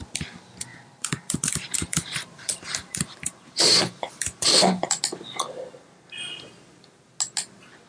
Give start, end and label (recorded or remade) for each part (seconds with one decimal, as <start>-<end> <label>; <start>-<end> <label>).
0.0-0.7 recorded; 0.7-5.0 remade; 5.0-7.9 recorded